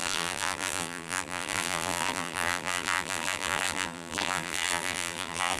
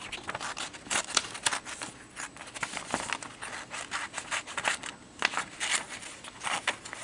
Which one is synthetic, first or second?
first